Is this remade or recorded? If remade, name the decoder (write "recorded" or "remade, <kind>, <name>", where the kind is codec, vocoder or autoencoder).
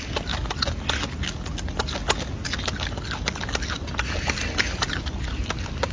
recorded